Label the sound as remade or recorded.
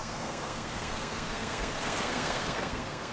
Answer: remade